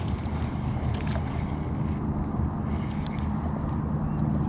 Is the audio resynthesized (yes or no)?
no